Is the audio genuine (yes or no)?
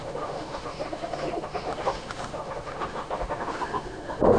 no